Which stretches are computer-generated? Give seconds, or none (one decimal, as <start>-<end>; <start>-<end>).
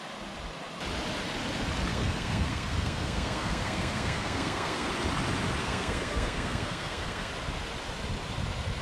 1.9-4.9; 5.6-7.3